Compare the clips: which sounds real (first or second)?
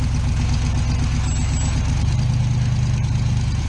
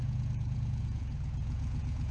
first